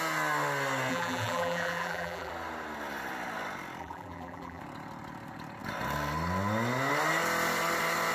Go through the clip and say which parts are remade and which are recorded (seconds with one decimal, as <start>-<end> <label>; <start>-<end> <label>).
0.0-0.9 recorded; 0.9-2.3 remade; 2.3-3.8 recorded; 3.8-4.6 remade; 4.6-8.1 recorded